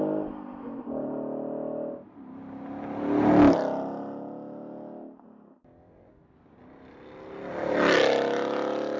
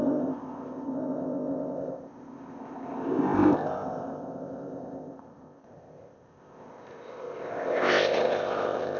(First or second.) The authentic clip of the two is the first